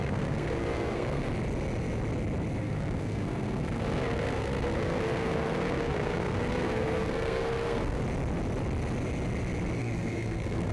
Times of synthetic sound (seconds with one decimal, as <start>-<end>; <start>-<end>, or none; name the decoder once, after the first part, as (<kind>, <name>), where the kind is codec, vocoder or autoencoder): 0.0-1.3 (codec, SNAC); 2.6-8.0; 9.8-10.7